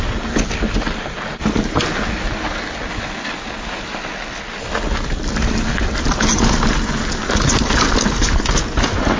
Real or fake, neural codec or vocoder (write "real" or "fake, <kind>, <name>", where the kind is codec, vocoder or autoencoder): real